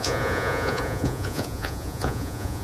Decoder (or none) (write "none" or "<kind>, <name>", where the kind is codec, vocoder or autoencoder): vocoder, Vocos